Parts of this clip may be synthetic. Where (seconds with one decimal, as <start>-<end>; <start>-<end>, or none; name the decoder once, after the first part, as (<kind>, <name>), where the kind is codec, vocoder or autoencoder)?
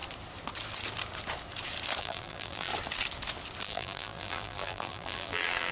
2.0-2.7 (vocoder, BigVGAN v2); 3.6-5.7